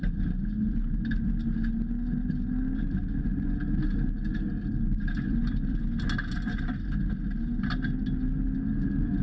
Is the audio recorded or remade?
recorded